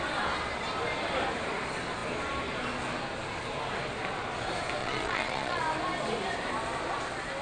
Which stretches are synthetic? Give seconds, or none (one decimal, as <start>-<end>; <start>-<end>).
4.8-5.6